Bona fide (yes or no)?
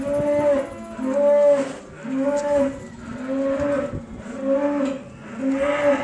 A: yes